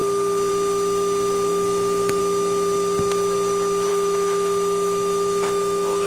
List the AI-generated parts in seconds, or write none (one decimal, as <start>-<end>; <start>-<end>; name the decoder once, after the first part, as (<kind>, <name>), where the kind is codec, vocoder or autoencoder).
1.5-2.2 (autoencoder, DAC-VAE); 3.9-6.1